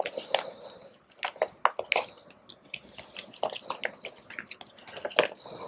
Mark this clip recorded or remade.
recorded